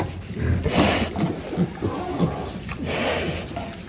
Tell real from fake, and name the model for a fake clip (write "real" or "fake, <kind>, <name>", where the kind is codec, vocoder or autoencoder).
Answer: real